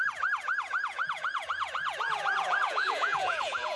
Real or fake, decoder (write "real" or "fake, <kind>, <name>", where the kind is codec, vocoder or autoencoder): fake, vocoder, Vocos